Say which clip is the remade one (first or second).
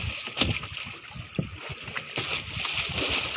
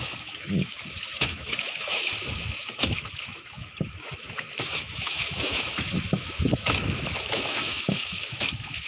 second